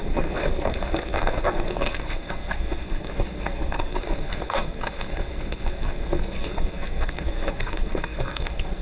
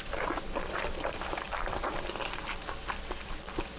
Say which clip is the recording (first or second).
second